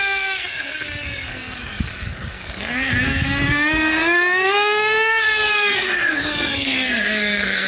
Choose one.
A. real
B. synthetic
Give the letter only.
B